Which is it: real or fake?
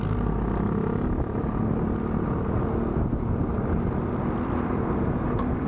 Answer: real